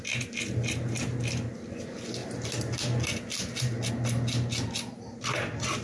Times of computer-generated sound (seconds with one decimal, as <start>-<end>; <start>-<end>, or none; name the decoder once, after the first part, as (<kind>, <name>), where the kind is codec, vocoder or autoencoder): none